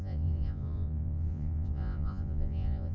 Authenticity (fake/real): fake